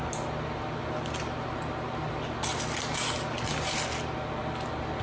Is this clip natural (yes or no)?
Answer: yes